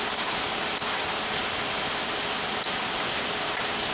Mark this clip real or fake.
real